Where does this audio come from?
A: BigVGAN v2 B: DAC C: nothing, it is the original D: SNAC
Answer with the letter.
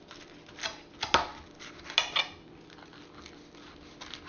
C